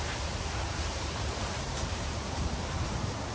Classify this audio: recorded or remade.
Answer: remade